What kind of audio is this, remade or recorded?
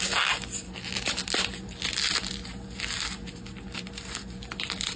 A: recorded